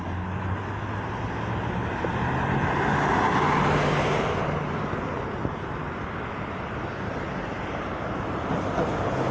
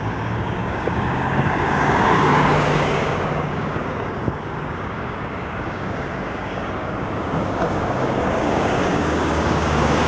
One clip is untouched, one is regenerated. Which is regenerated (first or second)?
second